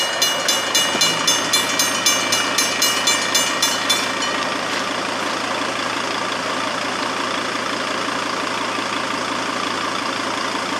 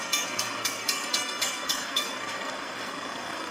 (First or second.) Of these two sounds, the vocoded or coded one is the second